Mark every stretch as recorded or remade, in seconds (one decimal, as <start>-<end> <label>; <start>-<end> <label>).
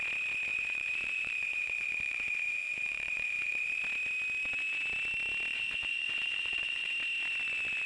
0.0-0.5 recorded; 0.5-3.8 remade; 3.8-5.5 recorded; 5.5-6.9 remade; 6.9-7.9 recorded